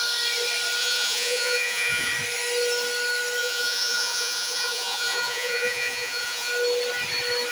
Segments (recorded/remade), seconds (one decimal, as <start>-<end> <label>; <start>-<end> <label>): 0.0-0.8 recorded; 0.8-2.1 remade; 2.1-3.4 recorded; 3.4-6.5 remade; 6.5-7.5 recorded